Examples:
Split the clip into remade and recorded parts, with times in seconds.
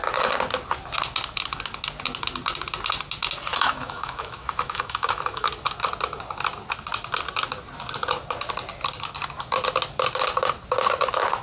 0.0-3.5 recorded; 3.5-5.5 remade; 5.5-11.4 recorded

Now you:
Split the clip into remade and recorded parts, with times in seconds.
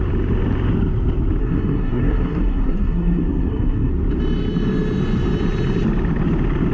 0.0-1.4 recorded; 1.4-3.9 remade; 3.9-6.7 recorded